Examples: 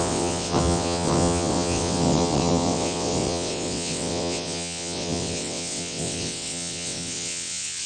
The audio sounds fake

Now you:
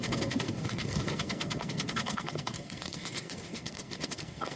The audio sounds fake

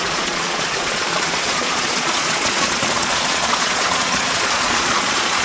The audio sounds fake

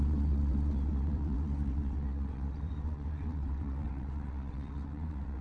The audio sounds fake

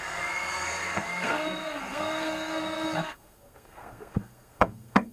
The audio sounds fake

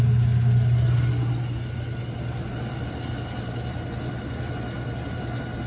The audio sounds real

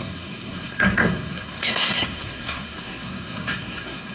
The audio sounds fake